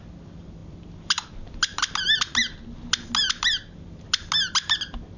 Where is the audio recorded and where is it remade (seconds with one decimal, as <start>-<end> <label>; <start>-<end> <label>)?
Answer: 0.0-5.2 recorded